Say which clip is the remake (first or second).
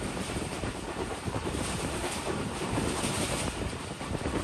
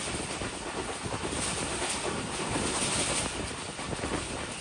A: first